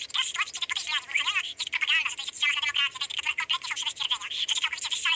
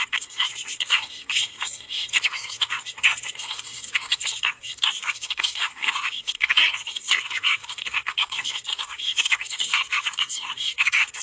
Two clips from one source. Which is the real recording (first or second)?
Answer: first